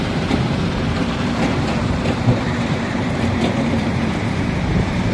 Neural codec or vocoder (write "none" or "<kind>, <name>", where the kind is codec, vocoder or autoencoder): vocoder, BigVGAN v2